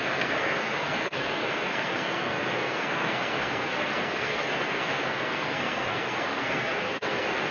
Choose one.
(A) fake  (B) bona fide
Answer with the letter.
A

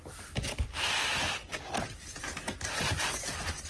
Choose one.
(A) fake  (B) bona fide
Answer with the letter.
B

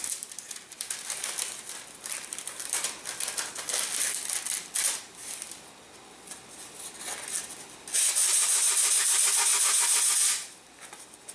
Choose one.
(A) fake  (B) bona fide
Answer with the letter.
B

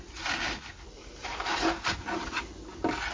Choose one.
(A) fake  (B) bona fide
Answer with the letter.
B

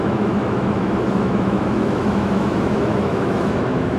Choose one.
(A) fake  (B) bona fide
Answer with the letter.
A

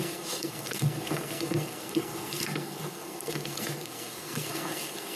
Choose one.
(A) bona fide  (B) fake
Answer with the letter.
B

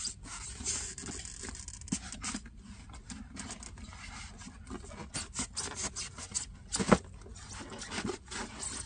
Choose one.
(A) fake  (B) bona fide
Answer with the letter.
B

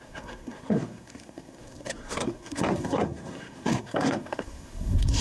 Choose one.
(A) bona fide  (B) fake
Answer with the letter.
B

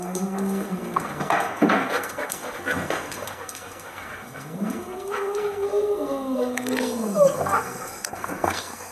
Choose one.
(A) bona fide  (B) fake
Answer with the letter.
B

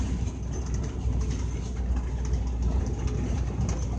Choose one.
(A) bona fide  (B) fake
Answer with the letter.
A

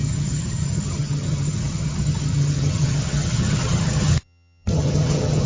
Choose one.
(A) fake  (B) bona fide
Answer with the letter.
A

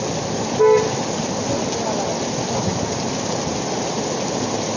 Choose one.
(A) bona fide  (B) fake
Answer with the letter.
A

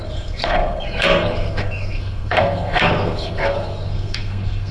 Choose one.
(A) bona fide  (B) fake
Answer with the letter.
B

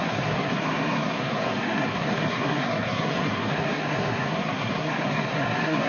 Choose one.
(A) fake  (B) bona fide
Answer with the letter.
A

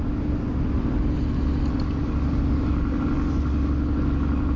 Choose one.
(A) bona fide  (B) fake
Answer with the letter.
A